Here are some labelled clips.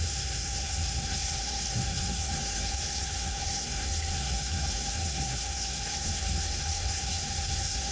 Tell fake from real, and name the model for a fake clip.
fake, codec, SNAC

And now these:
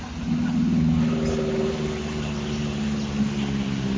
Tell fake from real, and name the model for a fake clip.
real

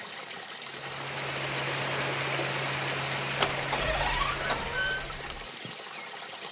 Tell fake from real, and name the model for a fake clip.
real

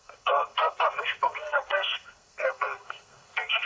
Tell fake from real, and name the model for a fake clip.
fake, codec, SNAC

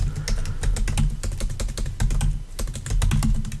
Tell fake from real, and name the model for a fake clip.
real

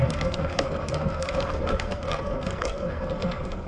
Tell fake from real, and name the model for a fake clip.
fake, codec, SNAC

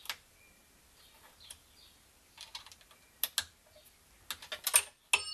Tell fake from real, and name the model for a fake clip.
real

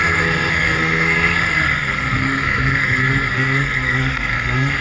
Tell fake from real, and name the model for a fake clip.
fake, codec, SNAC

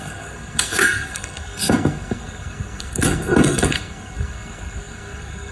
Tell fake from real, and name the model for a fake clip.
fake, codec, SNAC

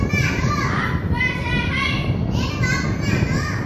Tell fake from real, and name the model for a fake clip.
real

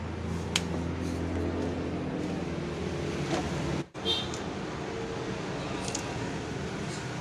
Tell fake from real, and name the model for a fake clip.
real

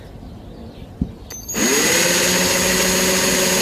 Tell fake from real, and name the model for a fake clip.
real